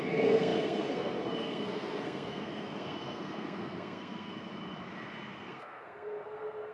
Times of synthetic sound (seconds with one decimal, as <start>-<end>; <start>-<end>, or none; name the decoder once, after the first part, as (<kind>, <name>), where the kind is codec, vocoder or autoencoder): 0.0-4.5 (codec, SNAC); 5.4-6.7